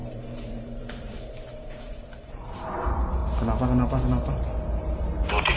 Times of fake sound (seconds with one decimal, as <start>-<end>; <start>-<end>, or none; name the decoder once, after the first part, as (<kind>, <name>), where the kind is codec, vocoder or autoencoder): 0.0-3.2 (vocoder, BigVGAN v2); 4.3-5.6